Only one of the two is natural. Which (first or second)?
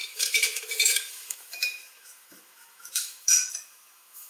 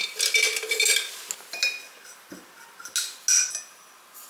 second